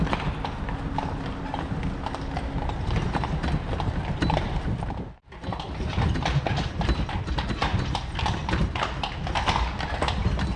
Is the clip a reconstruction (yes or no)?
no